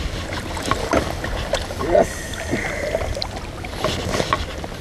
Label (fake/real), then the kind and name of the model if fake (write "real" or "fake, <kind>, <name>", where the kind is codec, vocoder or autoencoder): real